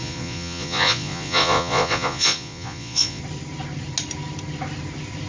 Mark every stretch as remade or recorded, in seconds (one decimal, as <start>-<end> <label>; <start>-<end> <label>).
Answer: 0.0-3.2 remade; 3.2-5.3 recorded